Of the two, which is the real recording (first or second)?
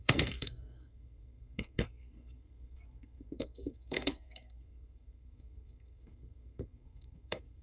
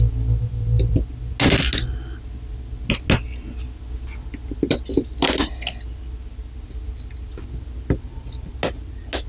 second